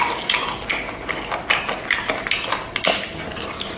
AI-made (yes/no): no